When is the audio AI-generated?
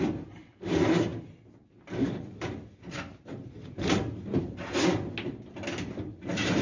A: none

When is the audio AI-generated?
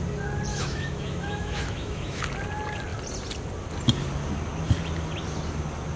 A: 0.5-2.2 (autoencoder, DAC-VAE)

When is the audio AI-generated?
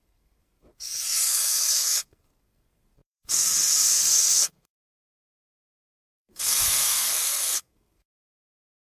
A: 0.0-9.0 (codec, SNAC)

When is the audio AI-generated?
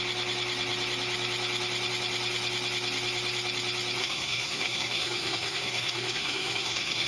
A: 4.0-7.1 (codec, SNAC)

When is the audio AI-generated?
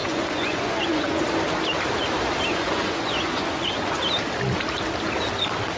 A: 0.0-1.2 (vocoder, Vocos); 2.5-4.0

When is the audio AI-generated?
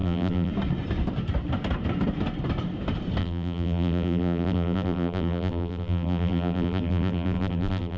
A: 0.0-0.5 (vocoder, BigVGAN v2); 3.2-8.0